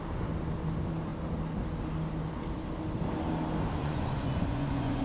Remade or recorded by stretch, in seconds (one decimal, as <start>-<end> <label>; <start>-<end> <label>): 0.0-3.8 recorded; 3.8-5.0 remade